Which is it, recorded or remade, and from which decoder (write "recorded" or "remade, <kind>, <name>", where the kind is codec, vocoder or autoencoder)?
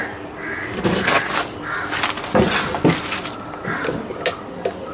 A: recorded